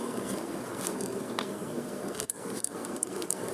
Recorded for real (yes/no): no